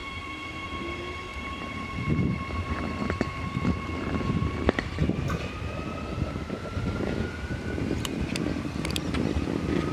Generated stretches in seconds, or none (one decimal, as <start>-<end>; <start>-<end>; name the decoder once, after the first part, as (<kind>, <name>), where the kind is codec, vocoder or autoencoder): 0.0-0.6 (vocoder, BigVGAN v2); 1.3-3.9